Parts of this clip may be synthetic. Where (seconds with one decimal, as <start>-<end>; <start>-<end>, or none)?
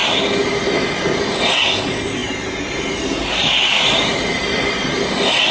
3.4-5.5